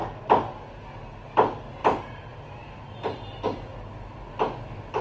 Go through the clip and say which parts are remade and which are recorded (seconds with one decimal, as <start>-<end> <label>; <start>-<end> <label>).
0.0-5.0 recorded